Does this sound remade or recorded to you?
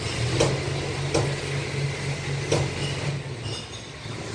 recorded